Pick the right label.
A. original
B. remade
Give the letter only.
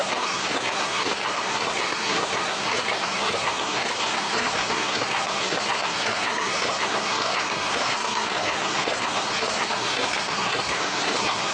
B